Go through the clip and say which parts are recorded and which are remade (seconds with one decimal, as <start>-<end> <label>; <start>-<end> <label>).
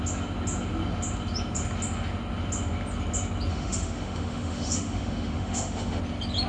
0.0-3.5 recorded; 3.5-6.0 remade; 6.0-6.5 recorded